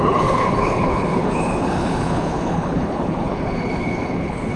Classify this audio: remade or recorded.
remade